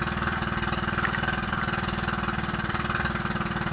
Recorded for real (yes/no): yes